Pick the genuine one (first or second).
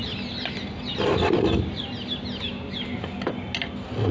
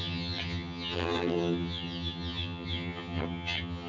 first